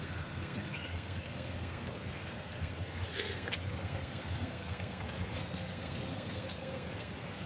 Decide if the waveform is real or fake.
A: fake